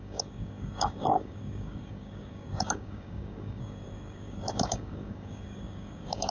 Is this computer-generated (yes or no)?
yes